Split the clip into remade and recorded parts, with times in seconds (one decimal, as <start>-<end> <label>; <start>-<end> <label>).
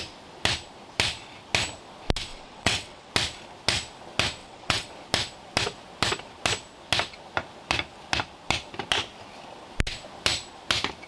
0.0-2.3 recorded; 2.3-3.1 remade; 3.1-4.4 recorded; 4.4-4.9 remade; 4.9-11.1 recorded